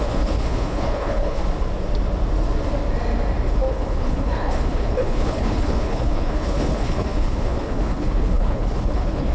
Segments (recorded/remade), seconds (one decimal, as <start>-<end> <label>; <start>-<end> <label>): 0.0-1.4 remade; 1.4-3.7 recorded; 3.7-9.3 remade